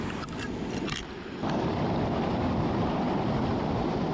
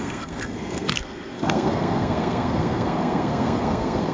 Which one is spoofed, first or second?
second